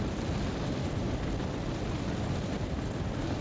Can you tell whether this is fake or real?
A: real